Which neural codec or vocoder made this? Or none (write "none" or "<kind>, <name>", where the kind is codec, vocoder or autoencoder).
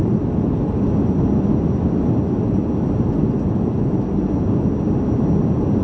none